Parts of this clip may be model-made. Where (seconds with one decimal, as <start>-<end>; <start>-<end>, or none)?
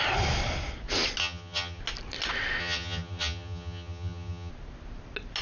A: 1.2-1.8; 2.6-4.5